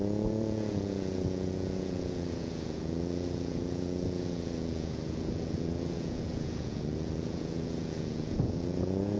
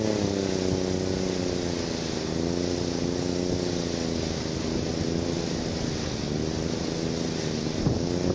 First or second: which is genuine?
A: second